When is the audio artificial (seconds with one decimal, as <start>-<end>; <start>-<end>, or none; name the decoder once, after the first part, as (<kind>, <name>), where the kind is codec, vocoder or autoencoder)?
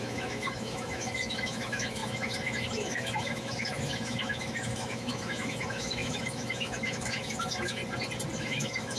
0.0-7.8 (autoencoder, DAC-VAE); 8.4-9.0